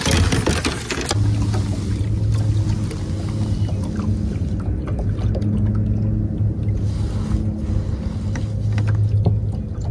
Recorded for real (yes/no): yes